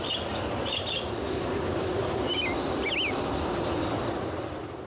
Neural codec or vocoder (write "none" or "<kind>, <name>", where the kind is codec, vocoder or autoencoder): none